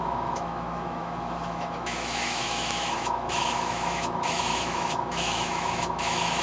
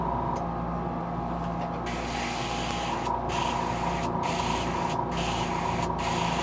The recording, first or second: second